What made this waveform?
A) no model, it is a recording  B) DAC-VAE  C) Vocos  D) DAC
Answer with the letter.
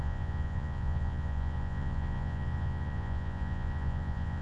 C